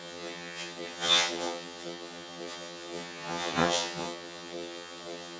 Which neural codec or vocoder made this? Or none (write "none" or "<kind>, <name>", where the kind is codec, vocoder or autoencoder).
vocoder, HiFi-GAN